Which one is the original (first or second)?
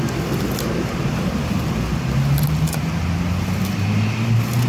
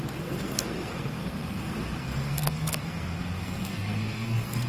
first